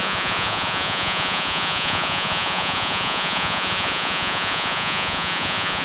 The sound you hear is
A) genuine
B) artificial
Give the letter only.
B